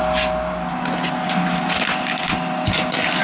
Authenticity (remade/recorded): recorded